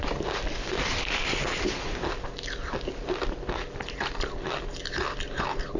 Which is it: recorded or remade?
recorded